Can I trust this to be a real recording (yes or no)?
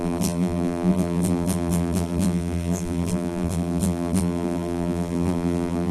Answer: no